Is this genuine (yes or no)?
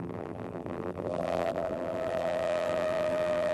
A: no